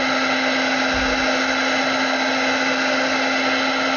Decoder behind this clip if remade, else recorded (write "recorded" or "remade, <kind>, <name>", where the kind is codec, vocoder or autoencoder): recorded